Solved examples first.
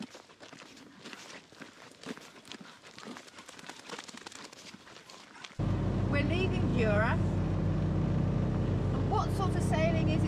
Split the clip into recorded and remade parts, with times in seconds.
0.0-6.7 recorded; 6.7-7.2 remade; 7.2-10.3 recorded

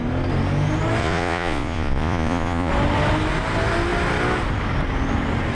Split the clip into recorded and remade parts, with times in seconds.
0.0-1.0 recorded; 1.0-2.7 remade; 2.7-5.5 recorded

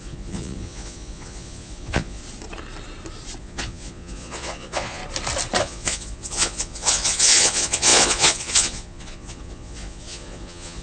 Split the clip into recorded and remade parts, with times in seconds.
0.0-2.2 remade; 2.2-3.4 recorded; 3.4-5.0 remade; 5.0-5.6 recorded; 5.6-10.8 remade